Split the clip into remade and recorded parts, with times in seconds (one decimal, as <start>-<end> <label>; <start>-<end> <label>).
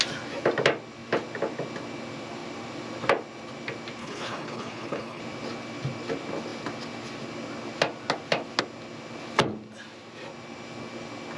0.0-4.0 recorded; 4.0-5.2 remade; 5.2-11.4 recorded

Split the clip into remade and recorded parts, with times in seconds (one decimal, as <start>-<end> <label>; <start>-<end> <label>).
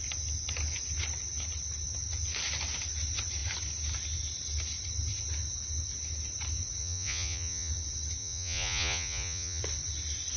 0.0-6.8 recorded; 6.8-7.7 remade; 7.7-8.2 recorded; 8.2-9.6 remade; 9.6-10.4 recorded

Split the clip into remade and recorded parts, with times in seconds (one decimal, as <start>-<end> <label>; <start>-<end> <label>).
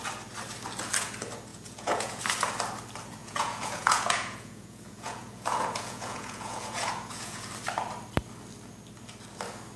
0.0-1.5 recorded; 1.5-2.2 remade; 2.2-3.2 recorded; 3.2-7.5 remade; 7.5-9.8 recorded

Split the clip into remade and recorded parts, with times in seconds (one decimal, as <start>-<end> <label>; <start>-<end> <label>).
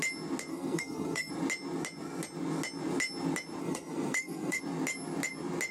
0.0-0.5 recorded; 0.5-1.3 remade; 1.3-3.6 recorded; 3.6-4.6 remade; 4.6-5.7 recorded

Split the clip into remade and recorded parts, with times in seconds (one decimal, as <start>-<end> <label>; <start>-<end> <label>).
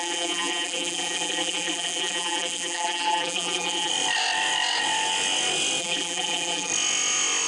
0.0-3.9 remade; 3.9-5.8 recorded; 5.8-6.7 remade; 6.7-7.5 recorded